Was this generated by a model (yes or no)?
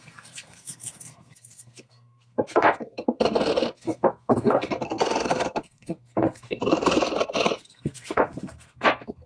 yes